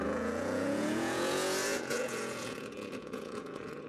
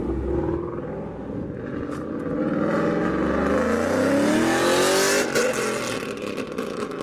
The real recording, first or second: second